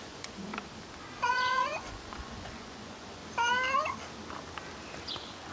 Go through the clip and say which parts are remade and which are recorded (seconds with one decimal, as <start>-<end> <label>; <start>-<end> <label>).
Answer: 0.0-0.5 remade; 0.5-1.2 recorded; 1.2-3.2 remade; 3.2-5.1 recorded; 5.1-5.5 remade